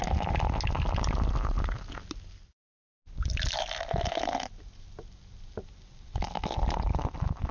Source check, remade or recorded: recorded